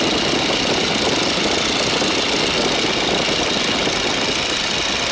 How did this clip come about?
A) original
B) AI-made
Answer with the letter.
A